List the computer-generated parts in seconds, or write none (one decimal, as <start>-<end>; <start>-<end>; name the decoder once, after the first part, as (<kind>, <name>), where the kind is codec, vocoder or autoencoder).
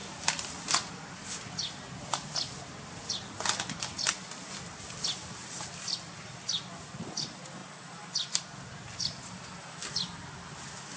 none